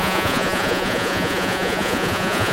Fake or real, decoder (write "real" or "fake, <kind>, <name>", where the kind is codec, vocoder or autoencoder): fake, vocoder, Vocos